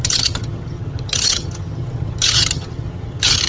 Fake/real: fake